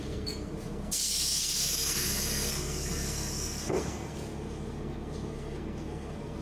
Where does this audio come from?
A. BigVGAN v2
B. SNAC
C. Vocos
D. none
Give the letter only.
B